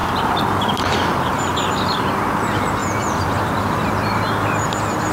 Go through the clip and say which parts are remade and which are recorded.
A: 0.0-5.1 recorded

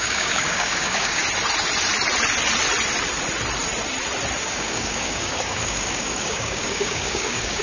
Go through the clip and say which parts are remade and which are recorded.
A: 0.0-1.2 remade; 1.2-4.4 recorded; 4.4-7.6 remade

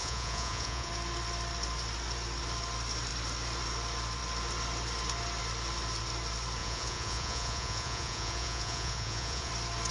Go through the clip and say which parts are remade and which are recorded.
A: 0.0-0.9 remade; 0.9-6.6 recorded; 6.6-9.5 remade; 9.5-9.9 recorded

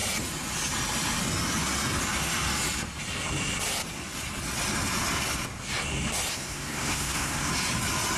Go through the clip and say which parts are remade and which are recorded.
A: 0.0-6.3 recorded; 6.3-7.5 remade; 7.5-8.2 recorded

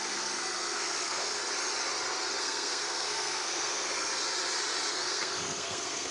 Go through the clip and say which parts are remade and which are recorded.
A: 0.0-1.4 remade; 1.4-2.4 recorded; 2.4-4.1 remade; 4.1-4.9 recorded; 4.9-6.1 remade